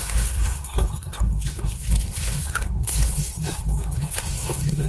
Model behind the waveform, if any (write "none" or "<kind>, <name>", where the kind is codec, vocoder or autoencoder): codec, SNAC